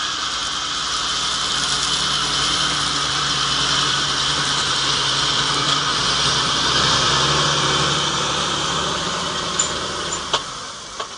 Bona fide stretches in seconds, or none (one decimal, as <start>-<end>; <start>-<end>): 0.4-3.1